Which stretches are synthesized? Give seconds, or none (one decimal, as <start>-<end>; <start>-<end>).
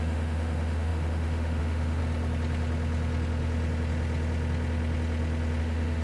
0.0-2.0; 5.6-6.0